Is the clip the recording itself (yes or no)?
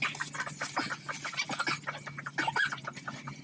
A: yes